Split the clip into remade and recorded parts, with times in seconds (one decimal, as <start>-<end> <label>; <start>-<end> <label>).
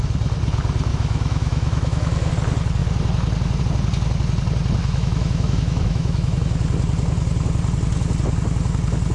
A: 0.0-0.9 recorded; 0.9-2.3 remade; 2.3-4.8 recorded; 4.8-6.4 remade; 6.4-9.1 recorded